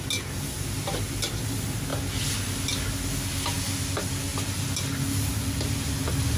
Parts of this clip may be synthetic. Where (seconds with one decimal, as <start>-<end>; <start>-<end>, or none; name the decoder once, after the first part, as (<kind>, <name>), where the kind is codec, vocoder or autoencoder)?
none